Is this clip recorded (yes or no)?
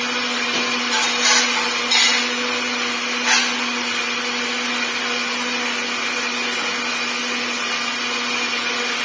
yes